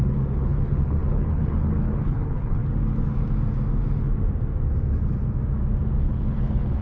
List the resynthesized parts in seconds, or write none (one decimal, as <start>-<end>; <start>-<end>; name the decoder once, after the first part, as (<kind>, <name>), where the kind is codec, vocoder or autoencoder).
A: 0.0-2.6 (codec, HILCodec); 6.0-6.8